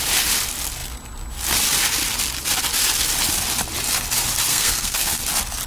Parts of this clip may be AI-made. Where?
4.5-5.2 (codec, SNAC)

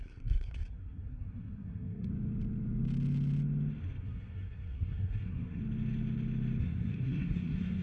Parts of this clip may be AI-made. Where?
0.0-2.1 (codec, SNAC); 4.0-5.6; 6.6-7.8

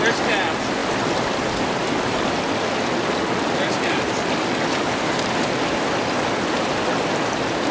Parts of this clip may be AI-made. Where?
none